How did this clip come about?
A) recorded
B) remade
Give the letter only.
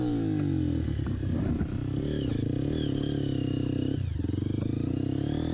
A